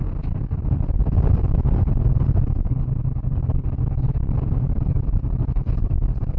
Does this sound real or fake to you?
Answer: real